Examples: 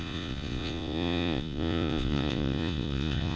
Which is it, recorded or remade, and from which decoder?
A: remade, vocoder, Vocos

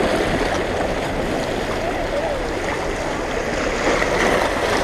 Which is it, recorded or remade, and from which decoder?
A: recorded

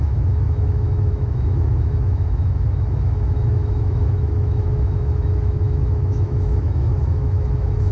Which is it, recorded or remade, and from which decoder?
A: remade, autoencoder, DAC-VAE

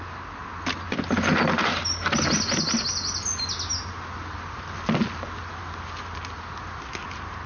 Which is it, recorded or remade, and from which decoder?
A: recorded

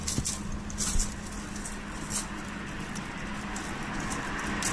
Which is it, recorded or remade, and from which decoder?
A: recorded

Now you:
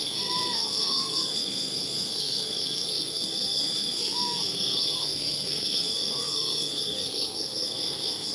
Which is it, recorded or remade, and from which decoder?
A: remade, codec, SNAC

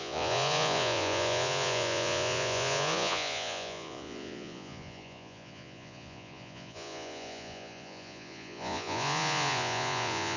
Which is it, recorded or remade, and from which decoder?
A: remade, vocoder, Vocos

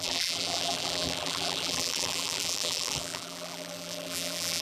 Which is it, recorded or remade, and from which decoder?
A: remade, vocoder, BigVGAN v2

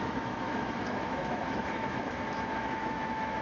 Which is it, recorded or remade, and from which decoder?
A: remade, autoencoder, DAC-VAE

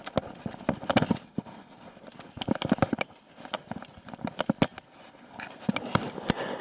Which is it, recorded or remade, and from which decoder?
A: recorded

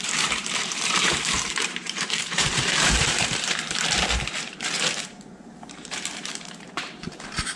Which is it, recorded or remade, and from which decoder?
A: remade, vocoder, BigVGAN v2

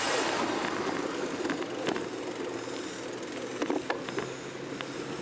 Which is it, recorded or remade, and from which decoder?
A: recorded